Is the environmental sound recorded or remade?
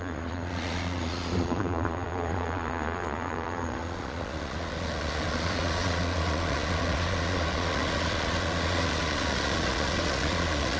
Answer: remade